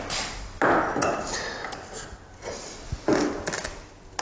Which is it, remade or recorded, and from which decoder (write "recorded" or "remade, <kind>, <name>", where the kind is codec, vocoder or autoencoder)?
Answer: recorded